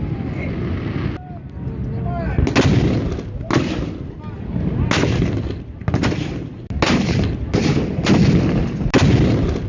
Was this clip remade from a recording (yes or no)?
no